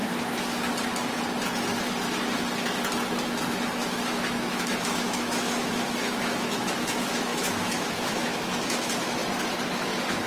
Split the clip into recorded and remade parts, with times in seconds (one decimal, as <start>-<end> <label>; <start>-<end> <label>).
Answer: 0.0-3.5 recorded; 3.5-9.2 remade; 9.2-9.7 recorded; 9.7-10.3 remade

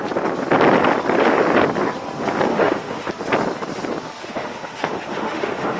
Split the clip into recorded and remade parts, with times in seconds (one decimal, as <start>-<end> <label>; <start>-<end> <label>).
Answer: 0.0-2.5 recorded; 2.5-3.1 remade; 3.1-4.2 recorded; 4.2-5.8 remade